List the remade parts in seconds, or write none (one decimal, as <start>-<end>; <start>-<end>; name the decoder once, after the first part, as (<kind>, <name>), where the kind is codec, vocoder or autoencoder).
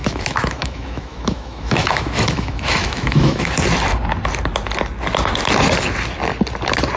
0.0-3.5 (autoencoder, DAC-VAE)